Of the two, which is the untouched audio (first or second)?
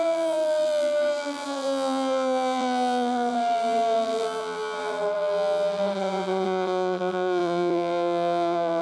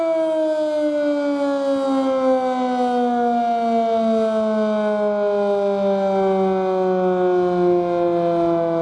second